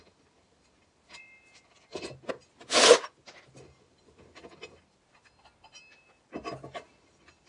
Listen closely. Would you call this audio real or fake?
real